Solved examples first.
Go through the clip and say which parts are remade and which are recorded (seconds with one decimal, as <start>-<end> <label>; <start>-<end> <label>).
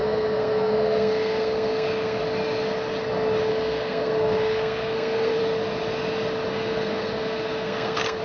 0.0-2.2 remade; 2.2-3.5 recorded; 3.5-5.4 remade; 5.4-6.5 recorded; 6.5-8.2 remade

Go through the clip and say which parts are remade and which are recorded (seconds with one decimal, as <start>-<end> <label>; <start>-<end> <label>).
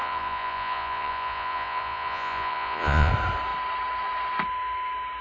0.0-3.1 remade; 3.1-5.2 recorded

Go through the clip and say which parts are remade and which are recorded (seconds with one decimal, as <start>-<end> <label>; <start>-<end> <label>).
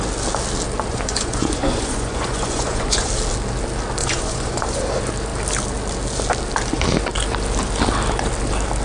0.0-0.9 recorded; 0.9-3.1 remade; 3.1-4.0 recorded; 4.0-4.8 remade; 4.8-8.8 recorded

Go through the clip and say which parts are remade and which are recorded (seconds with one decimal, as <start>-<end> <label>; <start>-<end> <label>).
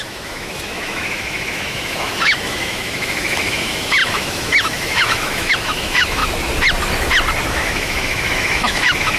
0.0-6.2 remade; 6.2-7.5 recorded; 7.5-9.2 remade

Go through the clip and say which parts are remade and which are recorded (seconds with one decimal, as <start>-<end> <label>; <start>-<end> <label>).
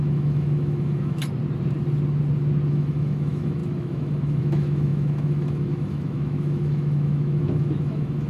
0.0-1.2 remade; 1.2-2.7 recorded; 2.7-8.3 remade